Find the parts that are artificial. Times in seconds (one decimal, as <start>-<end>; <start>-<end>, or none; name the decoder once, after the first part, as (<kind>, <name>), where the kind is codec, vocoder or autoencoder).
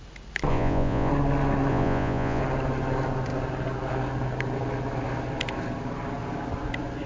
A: 0.5-1.1 (vocoder, Vocos); 1.7-2.4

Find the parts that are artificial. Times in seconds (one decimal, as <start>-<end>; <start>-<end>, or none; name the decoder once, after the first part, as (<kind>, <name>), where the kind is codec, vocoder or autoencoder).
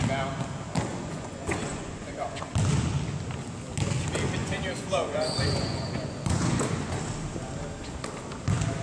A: 0.9-2.5 (vocoder, Vocos); 4.4-6.9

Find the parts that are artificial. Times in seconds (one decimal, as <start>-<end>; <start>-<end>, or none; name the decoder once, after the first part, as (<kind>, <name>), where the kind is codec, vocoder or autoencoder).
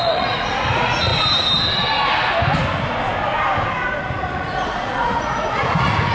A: 0.0-1.1 (vocoder, Vocos); 4.0-6.1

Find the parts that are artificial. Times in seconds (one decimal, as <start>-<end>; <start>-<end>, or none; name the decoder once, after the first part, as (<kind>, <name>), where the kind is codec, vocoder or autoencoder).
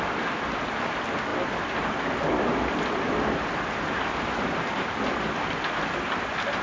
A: none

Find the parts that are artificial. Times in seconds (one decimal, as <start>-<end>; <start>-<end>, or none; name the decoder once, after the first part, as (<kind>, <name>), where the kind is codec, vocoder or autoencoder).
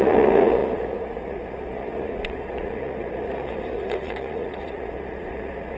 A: 0.0-5.8 (vocoder, Vocos)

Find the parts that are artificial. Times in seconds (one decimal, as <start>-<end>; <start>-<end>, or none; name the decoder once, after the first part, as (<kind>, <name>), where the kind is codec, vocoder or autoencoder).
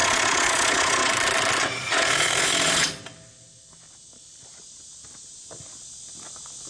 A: 0.0-1.1 (vocoder, Vocos); 1.6-3.0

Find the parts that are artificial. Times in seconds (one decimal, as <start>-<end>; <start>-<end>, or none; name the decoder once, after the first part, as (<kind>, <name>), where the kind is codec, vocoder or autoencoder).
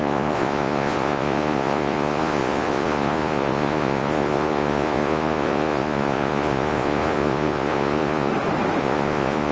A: 0.0-8.3 (vocoder, Vocos); 8.8-9.5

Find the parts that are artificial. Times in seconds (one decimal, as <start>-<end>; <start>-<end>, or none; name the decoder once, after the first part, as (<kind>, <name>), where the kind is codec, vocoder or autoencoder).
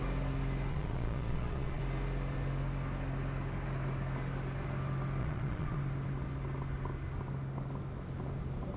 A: 0.7-1.8 (vocoder, Vocos); 5.2-5.8